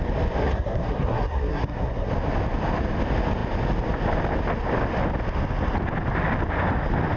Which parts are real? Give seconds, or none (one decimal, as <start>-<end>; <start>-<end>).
0.0-0.4; 2.1-7.2